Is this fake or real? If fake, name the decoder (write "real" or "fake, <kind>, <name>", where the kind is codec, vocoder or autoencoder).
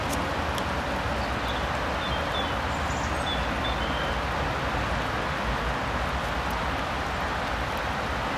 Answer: real